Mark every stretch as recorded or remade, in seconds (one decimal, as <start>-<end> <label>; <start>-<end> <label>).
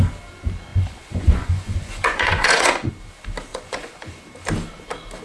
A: 0.0-0.7 recorded; 0.7-2.9 remade; 2.9-3.5 recorded; 3.5-4.2 remade; 4.2-5.2 recorded